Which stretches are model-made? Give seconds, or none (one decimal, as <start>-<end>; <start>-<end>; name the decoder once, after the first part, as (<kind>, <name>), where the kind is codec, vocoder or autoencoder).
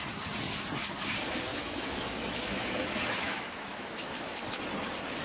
1.5-4.6 (autoencoder, DAC-VAE)